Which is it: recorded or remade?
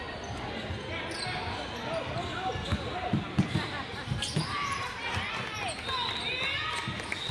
recorded